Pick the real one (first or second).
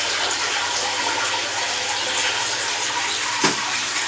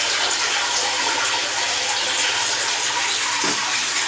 second